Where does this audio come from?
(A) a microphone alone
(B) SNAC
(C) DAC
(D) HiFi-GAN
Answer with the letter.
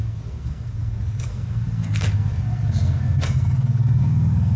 B